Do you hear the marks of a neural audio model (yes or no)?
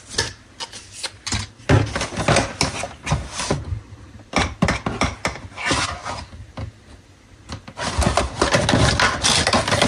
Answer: no